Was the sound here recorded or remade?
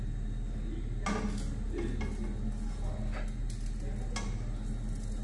recorded